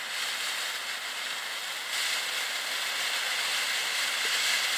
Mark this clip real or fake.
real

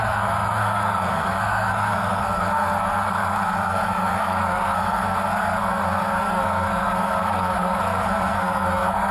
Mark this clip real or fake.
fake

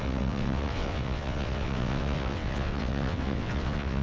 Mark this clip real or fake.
fake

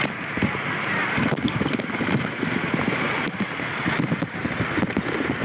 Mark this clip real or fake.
real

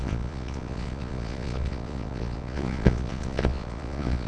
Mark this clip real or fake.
fake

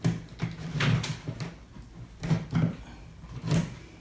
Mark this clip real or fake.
real